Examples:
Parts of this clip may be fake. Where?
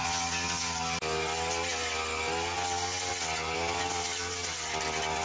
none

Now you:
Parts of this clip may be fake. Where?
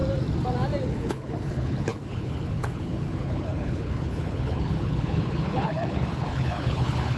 0.8-7.2